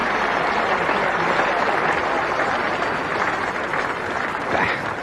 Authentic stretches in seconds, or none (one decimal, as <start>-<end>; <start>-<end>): 0.0-5.0